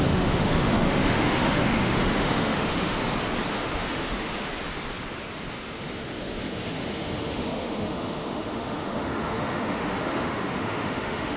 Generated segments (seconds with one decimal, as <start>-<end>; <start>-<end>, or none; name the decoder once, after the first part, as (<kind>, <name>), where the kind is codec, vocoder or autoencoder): 0.0-3.0 (autoencoder, DAC-VAE); 3.5-4.5; 5.5-11.4